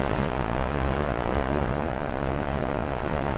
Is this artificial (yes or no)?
yes